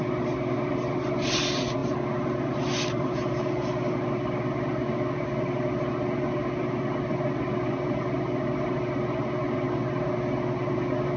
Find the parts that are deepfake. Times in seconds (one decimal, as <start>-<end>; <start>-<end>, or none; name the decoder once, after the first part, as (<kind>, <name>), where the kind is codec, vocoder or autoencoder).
none

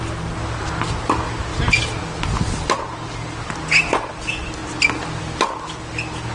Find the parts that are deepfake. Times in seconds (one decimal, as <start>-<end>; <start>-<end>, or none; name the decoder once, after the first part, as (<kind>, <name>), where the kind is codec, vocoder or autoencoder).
none

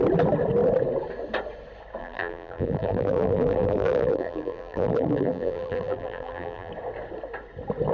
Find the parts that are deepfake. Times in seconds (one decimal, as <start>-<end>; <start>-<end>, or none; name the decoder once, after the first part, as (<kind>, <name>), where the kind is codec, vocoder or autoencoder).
2.0-6.7 (vocoder, BigVGAN v2)

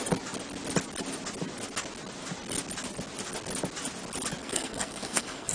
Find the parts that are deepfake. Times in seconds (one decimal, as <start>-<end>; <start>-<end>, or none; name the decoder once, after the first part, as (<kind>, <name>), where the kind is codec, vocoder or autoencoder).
4.4-5.5 (codec, SNAC)